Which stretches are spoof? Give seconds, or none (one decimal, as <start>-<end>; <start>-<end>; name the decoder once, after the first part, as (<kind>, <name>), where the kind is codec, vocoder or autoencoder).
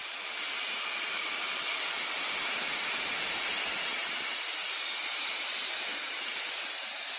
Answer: 2.0-3.9 (vocoder, BigVGAN v2); 4.4-7.2